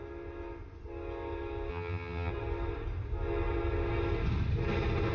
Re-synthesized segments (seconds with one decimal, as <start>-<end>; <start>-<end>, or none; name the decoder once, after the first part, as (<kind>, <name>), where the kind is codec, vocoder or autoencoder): 1.7-2.3 (vocoder, HiFi-GAN)

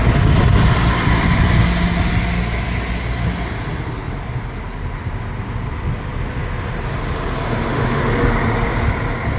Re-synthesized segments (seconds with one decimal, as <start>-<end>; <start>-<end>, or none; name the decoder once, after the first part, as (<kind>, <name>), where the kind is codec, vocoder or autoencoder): 7.4-8.0 (autoencoder, DAC-VAE)

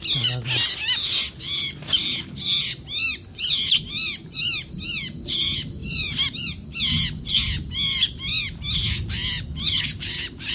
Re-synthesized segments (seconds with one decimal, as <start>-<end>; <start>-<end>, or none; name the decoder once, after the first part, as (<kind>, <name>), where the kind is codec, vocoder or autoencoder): none

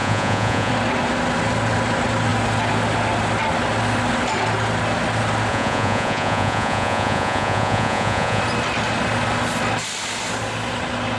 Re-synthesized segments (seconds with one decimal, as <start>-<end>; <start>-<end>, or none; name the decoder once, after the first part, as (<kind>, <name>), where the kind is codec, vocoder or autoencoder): 0.0-0.7 (vocoder, Vocos); 5.5-8.4

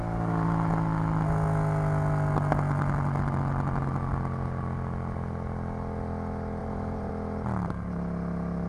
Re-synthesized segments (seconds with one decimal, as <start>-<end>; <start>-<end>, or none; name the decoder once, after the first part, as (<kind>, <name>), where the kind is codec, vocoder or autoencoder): 6.6-7.1 (vocoder, BigVGAN v2)

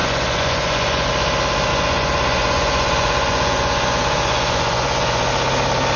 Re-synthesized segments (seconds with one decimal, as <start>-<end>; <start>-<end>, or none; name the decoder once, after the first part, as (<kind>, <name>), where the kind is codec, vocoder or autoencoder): 0.0-1.1 (vocoder, Vocos); 1.7-5.3

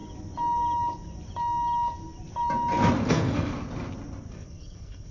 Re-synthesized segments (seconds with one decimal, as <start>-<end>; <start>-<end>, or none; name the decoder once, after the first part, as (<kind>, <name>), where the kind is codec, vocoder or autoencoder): 3.1-3.5 (codec, SNAC); 4.3-5.1